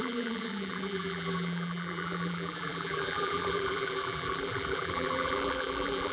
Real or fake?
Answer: fake